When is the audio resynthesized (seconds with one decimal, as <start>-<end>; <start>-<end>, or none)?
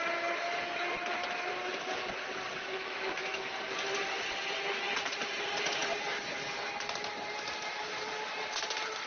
2.6-3.6